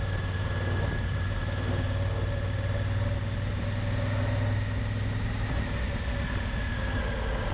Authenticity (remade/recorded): recorded